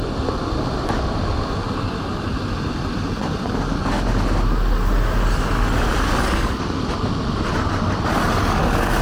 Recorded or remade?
recorded